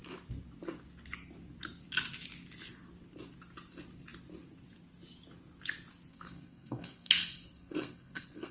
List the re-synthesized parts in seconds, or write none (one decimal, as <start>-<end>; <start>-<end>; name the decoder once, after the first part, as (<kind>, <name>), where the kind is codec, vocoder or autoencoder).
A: 6.1-8.5 (codec, SNAC)